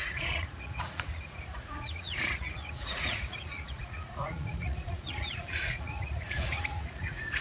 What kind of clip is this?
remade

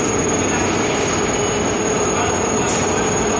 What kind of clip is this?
recorded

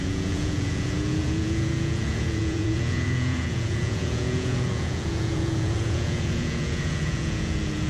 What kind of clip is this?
remade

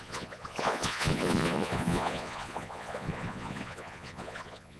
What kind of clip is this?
remade